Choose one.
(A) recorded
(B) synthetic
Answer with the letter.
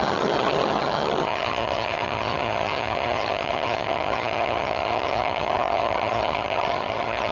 B